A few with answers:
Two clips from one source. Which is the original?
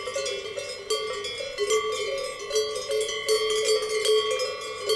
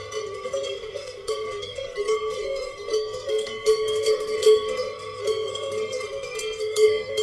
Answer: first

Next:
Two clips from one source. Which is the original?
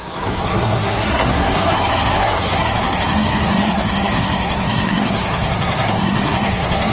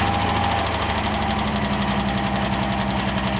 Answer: second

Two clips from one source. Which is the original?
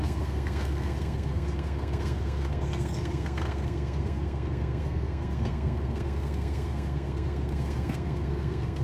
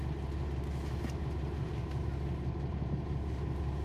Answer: second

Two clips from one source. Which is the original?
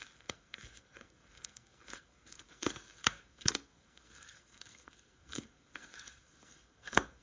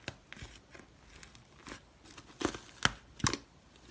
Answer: second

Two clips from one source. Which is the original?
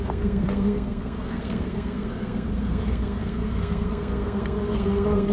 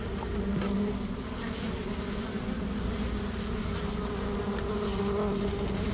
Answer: second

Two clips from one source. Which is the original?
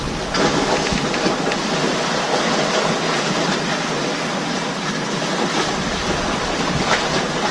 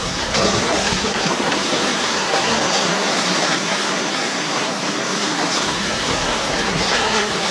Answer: first